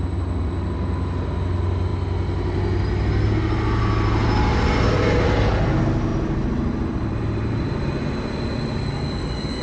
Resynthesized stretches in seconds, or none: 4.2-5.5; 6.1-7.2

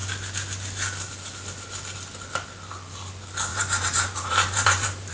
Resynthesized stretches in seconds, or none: 3.5-5.1

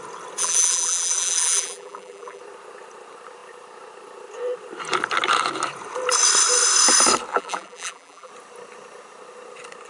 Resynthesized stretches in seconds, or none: 0.4-2.4; 7.3-8.3